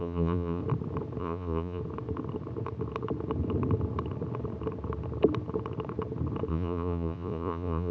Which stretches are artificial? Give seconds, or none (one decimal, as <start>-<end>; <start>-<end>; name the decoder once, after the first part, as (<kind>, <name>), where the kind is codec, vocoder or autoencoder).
0.0-0.6 (vocoder, Vocos); 1.2-1.8; 6.5-7.9